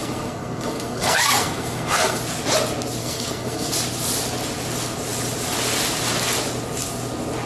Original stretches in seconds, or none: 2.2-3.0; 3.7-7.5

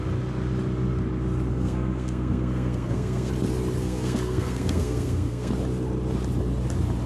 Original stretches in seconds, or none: 0.0-1.5; 3.3-3.8; 5.5-7.1

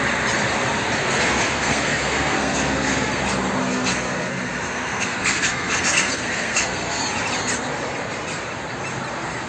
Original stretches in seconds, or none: 0.0-1.0; 3.2-3.6; 7.0-9.5

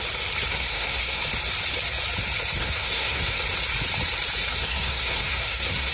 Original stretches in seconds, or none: 0.0-0.5; 1.2-2.6; 3.4-4.6

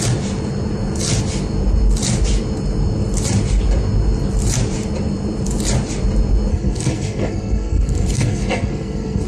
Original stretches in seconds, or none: 0.0-6.5

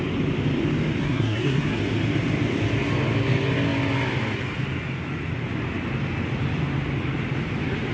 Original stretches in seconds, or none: 0.0-1.0; 1.8-7.9

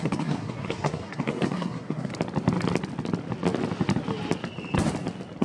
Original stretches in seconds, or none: 2.1-5.4

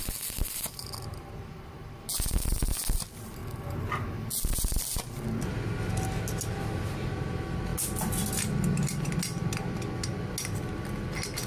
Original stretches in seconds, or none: 0.0-11.5